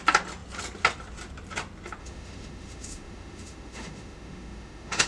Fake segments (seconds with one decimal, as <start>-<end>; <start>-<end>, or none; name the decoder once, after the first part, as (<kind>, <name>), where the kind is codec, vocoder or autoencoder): 2.0-5.1 (autoencoder, DAC-VAE)